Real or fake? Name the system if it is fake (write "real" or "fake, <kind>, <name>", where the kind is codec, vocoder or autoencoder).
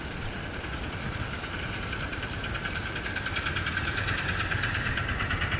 real